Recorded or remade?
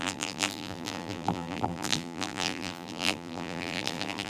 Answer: remade